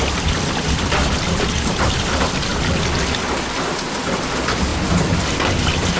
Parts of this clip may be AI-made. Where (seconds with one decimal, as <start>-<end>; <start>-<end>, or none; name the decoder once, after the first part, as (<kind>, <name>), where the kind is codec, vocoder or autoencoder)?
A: 0.0-2.5 (vocoder, BigVGAN v2); 3.4-4.7; 5.5-6.0